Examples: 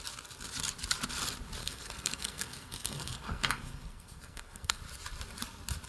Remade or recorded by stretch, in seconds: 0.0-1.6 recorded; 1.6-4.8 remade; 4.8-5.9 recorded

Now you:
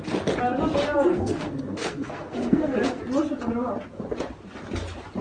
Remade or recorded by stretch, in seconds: 0.0-1.1 recorded; 1.1-3.0 remade; 3.0-5.2 recorded

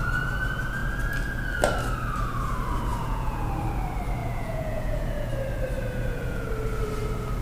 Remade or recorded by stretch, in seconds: 0.0-2.9 recorded; 2.9-3.5 remade; 3.5-4.2 recorded; 4.2-5.3 remade; 5.3-5.8 recorded; 5.8-6.5 remade; 6.5-7.4 recorded

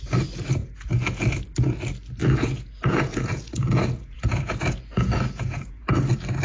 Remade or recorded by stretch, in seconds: 0.0-0.6 recorded; 0.6-1.2 remade; 1.2-2.2 recorded; 2.2-6.0 remade; 6.0-6.4 recorded

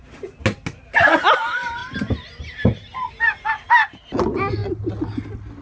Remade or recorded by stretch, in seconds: 0.0-5.6 recorded

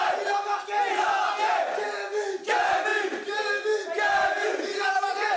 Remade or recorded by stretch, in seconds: 0.0-5.4 recorded